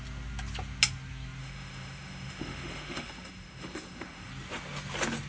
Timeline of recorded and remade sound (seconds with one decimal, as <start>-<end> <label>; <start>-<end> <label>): 0.0-1.4 recorded; 1.4-4.3 remade; 4.3-5.3 recorded